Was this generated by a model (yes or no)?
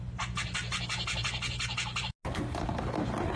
no